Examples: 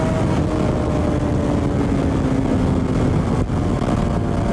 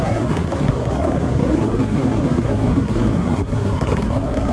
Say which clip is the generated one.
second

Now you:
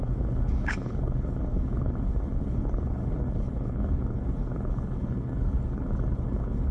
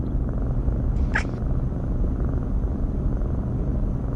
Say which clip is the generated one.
first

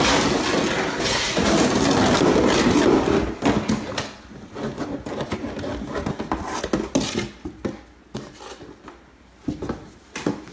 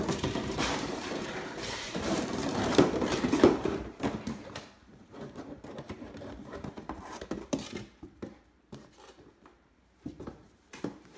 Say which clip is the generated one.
second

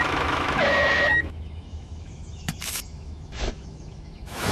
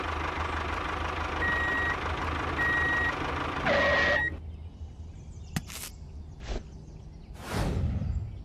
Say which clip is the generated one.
first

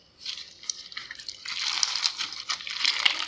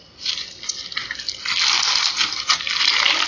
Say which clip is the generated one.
first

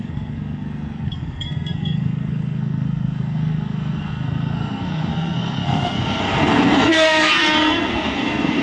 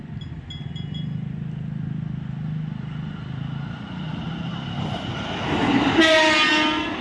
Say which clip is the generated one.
first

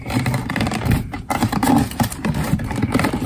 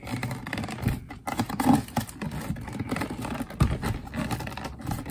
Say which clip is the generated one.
first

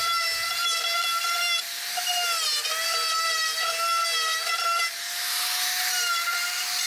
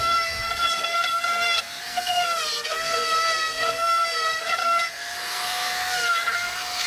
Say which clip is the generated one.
second